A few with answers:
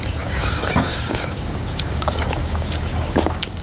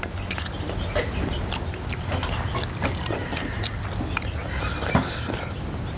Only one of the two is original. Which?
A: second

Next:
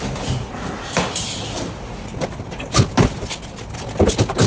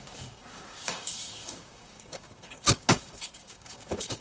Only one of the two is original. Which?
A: first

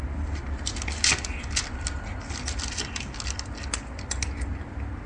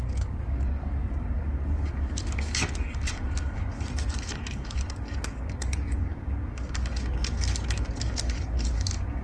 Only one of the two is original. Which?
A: first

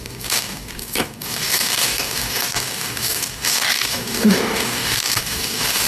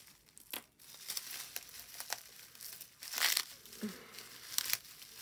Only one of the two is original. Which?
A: second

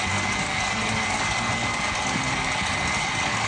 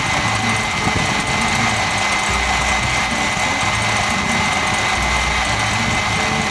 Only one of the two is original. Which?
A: second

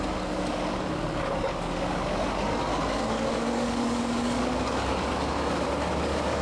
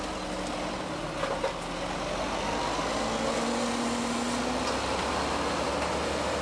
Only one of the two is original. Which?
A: second